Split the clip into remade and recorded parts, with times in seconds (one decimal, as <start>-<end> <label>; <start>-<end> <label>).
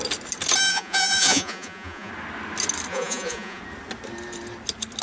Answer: 0.0-0.7 recorded; 0.7-2.1 remade; 2.1-2.9 recorded; 2.9-3.6 remade; 3.6-5.0 recorded